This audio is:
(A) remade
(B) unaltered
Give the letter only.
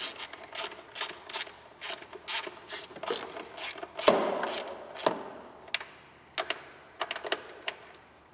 B